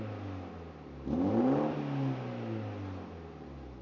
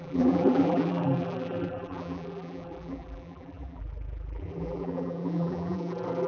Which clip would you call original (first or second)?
first